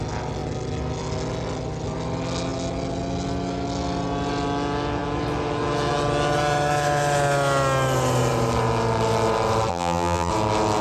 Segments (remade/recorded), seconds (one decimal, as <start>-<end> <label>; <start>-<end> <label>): 0.0-9.7 recorded; 9.7-10.3 remade; 10.3-10.8 recorded